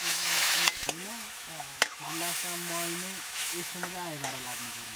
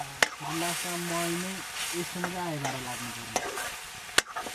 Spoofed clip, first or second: first